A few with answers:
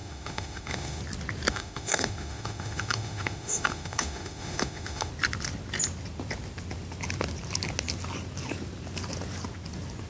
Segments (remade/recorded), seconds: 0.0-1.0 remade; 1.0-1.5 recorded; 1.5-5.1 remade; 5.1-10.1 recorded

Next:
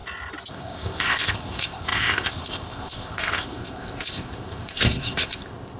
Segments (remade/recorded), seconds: 0.0-0.5 recorded; 0.5-5.8 remade

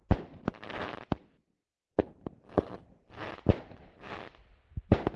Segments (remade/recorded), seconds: 0.0-5.2 recorded